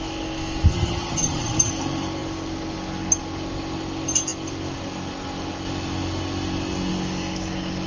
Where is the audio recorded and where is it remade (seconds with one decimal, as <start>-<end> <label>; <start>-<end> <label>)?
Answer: 0.0-0.7 recorded; 0.7-1.7 remade; 1.7-7.9 recorded